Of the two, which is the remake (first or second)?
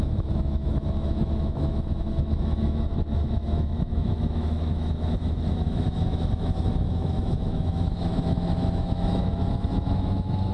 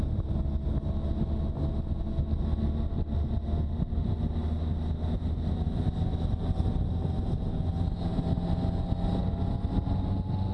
first